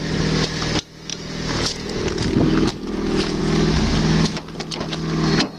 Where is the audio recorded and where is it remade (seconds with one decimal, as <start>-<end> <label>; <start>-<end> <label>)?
0.0-1.1 recorded; 1.1-2.3 remade; 2.3-2.7 recorded; 2.7-3.4 remade; 3.4-5.6 recorded